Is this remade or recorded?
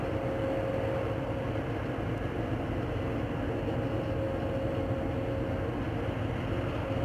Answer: recorded